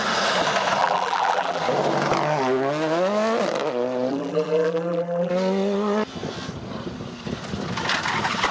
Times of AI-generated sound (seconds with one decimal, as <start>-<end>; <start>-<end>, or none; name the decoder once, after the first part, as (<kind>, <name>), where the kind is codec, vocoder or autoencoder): 0.8-1.6 (vocoder, BigVGAN v2); 4.1-5.3